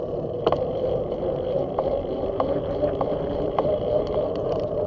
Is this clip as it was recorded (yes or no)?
no